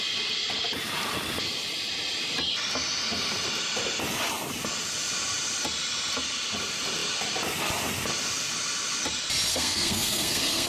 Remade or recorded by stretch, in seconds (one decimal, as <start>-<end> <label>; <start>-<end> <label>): 0.0-9.5 recorded; 9.5-10.7 remade